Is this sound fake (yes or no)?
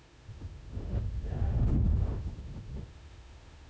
yes